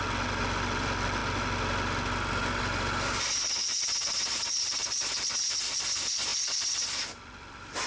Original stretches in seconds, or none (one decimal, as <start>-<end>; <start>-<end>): 1.2-3.2; 6.3-7.2